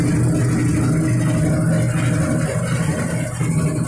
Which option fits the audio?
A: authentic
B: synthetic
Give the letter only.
A